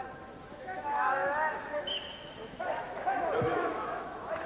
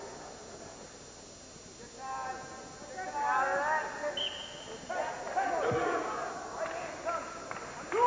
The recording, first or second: second